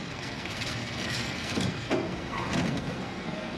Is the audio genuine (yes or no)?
no